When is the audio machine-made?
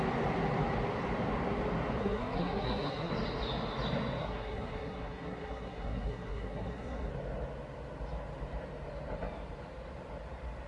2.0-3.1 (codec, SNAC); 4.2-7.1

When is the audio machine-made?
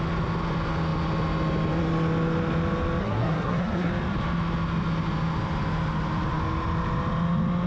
3.0-3.9 (codec, SNAC)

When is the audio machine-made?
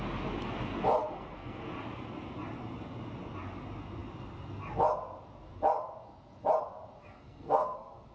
1.0-1.6 (codec, SNAC); 7.0-8.1